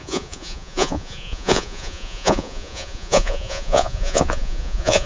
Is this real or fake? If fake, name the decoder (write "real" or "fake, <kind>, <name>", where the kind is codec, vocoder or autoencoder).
fake, vocoder, Vocos